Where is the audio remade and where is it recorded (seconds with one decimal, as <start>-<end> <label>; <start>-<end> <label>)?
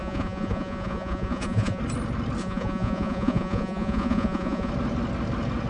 0.0-1.8 remade; 1.8-2.4 recorded; 2.4-4.7 remade; 4.7-5.7 recorded